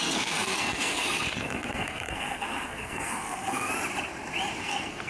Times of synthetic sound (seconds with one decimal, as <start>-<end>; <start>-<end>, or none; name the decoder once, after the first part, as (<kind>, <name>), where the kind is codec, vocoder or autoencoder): 0.0-3.7 (codec, SNAC); 4.6-5.1